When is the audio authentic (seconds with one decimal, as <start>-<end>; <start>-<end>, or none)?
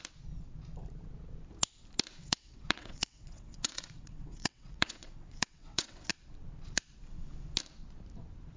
0.0-2.2; 6.1-8.6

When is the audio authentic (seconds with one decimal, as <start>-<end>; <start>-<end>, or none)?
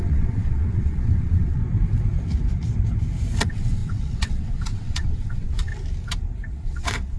1.6-3.4; 5.7-6.5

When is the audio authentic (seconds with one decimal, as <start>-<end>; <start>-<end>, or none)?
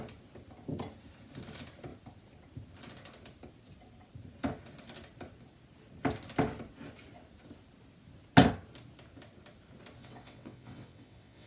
0.0-10.0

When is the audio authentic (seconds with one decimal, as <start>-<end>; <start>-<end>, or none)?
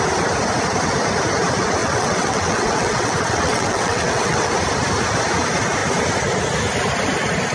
0.0-1.8; 4.5-7.5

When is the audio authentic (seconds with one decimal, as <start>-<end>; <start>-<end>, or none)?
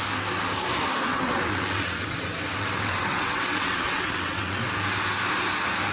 0.0-1.1; 4.6-5.9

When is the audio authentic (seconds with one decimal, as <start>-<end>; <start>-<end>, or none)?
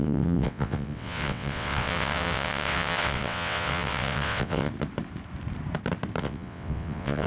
4.7-6.2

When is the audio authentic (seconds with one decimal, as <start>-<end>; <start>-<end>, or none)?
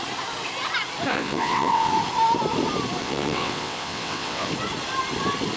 0.0-1.1; 1.9-3.0; 4.5-5.6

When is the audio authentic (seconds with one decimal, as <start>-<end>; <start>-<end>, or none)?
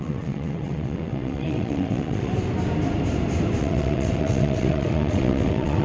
2.3-3.6